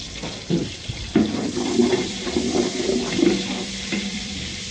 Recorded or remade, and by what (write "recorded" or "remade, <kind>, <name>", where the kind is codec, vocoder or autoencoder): remade, vocoder, BigVGAN v2